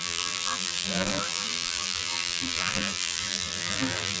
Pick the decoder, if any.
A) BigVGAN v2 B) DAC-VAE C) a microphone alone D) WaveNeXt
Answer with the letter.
A